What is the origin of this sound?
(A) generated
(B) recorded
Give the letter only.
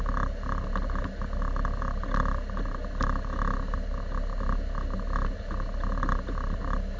B